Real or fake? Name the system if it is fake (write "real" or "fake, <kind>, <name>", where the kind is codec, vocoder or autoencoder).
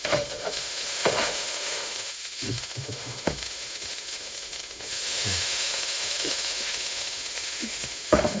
fake, autoencoder, DAC-VAE